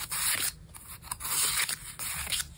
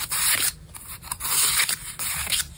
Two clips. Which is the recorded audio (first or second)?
first